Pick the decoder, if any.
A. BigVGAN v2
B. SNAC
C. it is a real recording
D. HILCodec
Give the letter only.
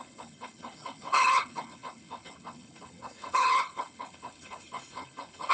D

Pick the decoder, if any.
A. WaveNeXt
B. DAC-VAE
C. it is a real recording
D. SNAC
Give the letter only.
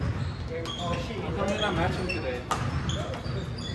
C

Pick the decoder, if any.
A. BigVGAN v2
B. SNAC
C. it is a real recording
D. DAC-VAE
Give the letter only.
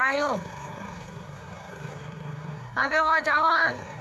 B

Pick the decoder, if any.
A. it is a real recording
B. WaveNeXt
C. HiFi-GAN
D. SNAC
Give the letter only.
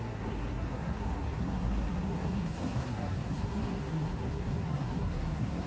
D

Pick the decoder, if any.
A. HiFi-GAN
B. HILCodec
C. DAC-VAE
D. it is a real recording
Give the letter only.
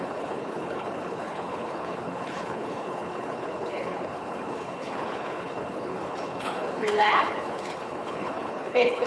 B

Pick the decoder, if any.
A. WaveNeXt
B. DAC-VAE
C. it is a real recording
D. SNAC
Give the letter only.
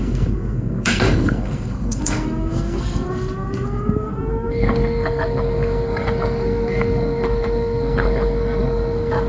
D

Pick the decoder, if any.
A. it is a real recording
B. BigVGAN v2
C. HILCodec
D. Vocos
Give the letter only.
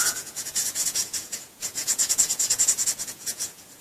D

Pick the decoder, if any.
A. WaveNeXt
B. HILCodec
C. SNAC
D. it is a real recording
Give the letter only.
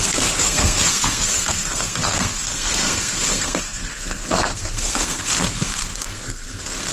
C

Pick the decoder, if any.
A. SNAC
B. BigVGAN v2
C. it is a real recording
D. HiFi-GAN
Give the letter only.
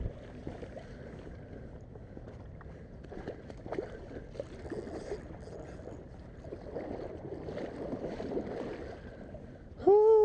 C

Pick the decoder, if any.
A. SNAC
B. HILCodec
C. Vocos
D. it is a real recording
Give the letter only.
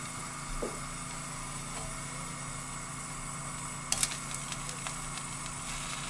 D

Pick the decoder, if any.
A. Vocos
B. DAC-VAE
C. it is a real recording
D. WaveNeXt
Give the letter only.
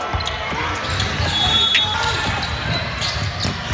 C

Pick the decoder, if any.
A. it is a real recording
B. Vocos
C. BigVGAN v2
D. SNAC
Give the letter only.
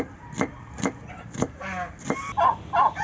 A